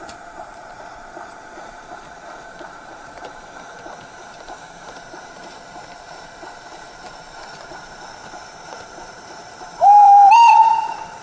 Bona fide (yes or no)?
no